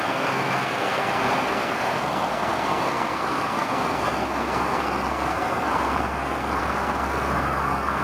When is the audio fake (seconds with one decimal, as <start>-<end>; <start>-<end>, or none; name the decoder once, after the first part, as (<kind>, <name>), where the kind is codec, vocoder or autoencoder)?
0.0-8.0 (codec, SNAC)